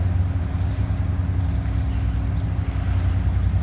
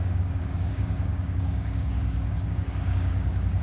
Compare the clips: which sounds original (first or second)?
first